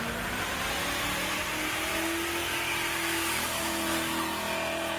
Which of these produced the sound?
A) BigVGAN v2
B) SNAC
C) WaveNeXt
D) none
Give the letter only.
D